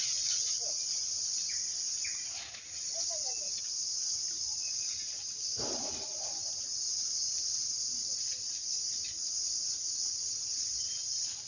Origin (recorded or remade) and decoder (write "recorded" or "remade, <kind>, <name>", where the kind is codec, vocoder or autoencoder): recorded